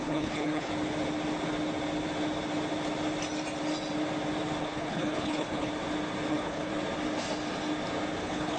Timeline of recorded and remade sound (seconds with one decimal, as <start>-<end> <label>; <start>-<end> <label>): 0.0-0.7 remade; 0.7-4.6 recorded; 4.6-5.7 remade; 5.7-6.3 recorded; 6.3-6.7 remade; 6.7-8.2 recorded; 8.2-8.6 remade